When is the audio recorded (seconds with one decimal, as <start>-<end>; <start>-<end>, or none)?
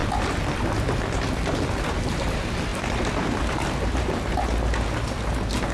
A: 0.0-5.7